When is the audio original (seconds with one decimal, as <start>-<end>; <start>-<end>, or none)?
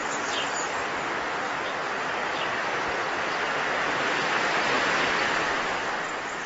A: 0.6-6.5